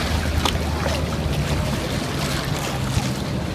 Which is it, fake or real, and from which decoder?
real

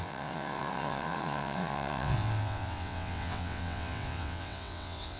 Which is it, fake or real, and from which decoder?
fake, vocoder, WaveNeXt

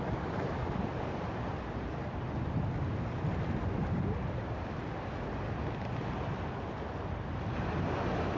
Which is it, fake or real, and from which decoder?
real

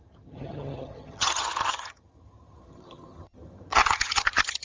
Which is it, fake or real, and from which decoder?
fake, vocoder, HiFi-GAN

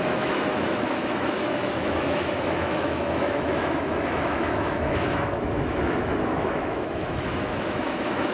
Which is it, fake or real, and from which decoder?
fake, autoencoder, DAC-VAE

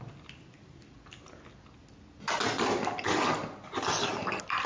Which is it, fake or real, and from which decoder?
real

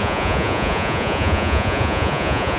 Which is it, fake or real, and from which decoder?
fake, vocoder, Vocos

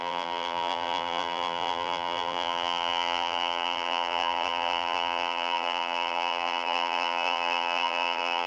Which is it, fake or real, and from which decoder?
fake, vocoder, BigVGAN v2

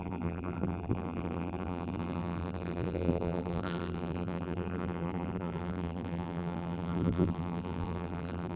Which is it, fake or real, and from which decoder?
fake, vocoder, BigVGAN v2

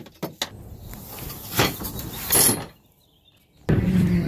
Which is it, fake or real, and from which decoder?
real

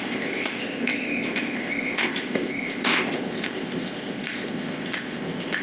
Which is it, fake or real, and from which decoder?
fake, codec, ZipCodec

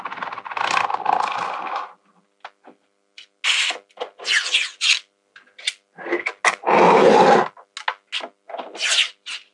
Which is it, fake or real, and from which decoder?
real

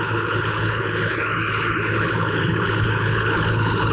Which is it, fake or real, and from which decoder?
fake, codec, HILCodec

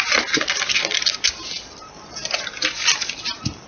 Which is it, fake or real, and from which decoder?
real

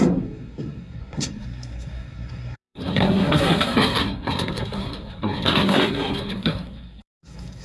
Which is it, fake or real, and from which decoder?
fake, codec, SNAC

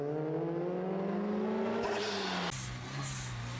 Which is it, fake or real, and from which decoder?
real